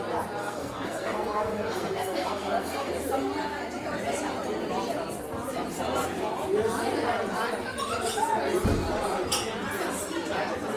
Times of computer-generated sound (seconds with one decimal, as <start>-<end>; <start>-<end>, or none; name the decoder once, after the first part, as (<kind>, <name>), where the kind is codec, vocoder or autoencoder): 0.4-2.9 (codec, SNAC)